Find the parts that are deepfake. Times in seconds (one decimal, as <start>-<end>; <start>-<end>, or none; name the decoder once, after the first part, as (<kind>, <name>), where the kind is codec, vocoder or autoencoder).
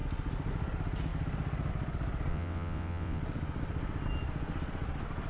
2.3-3.2 (vocoder, WaveNeXt)